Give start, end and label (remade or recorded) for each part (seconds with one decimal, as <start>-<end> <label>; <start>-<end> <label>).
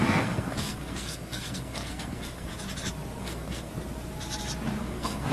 0.0-2.5 remade; 2.5-3.2 recorded; 3.2-3.7 remade; 3.7-4.8 recorded; 4.8-5.3 remade